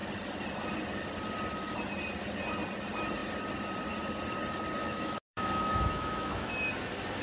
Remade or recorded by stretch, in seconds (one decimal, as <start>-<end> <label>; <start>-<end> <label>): 0.0-4.8 recorded; 4.8-6.5 remade; 6.5-7.2 recorded

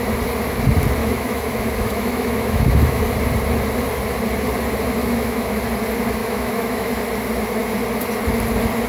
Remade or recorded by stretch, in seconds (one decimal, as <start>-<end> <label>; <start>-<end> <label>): 0.0-1.0 recorded; 1.0-3.0 remade; 3.0-5.0 recorded; 5.0-5.6 remade; 5.6-6.2 recorded; 6.2-6.9 remade; 6.9-8.9 recorded

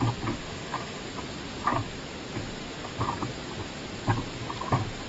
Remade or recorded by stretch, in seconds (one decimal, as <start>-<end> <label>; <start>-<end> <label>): 0.0-0.4 recorded; 0.4-1.0 remade; 1.0-5.1 recorded

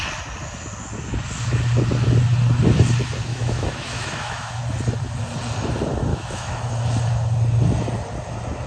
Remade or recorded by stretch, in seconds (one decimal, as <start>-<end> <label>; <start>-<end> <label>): 0.0-3.3 recorded; 3.3-4.6 remade; 4.6-6.1 recorded; 6.1-6.7 remade; 6.7-8.7 recorded